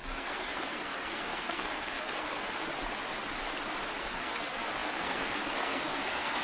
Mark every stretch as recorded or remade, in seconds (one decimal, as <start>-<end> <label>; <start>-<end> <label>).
0.0-2.7 remade; 2.7-4.0 recorded; 4.0-6.4 remade